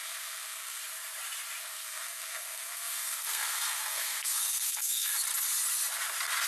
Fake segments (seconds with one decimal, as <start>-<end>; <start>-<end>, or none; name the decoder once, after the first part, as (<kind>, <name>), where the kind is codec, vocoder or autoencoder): 0.0-0.8 (codec, SNAC); 1.6-5.1